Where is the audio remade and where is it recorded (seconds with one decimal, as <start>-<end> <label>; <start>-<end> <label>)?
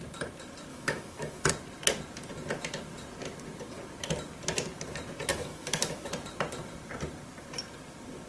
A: 0.0-0.7 recorded; 0.7-1.5 remade; 1.5-5.3 recorded; 5.3-6.1 remade; 6.1-8.3 recorded